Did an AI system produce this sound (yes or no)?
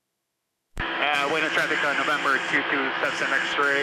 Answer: yes